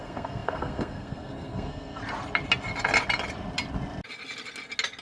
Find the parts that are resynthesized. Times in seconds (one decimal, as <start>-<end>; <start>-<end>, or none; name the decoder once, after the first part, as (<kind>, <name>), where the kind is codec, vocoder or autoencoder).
0.0-2.0 (codec, SNAC)